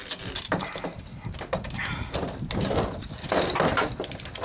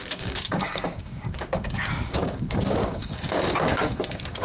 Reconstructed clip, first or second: second